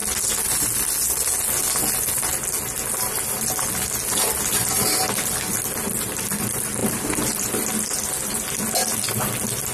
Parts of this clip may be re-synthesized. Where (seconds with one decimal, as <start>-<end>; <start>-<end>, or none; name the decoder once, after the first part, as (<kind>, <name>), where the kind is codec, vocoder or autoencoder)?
none